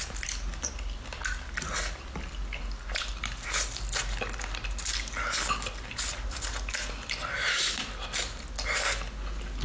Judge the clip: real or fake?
real